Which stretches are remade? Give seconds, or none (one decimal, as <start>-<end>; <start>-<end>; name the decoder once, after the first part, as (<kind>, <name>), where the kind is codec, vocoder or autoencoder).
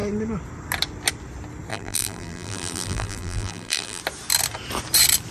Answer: 1.7-4.0 (vocoder, BigVGAN v2)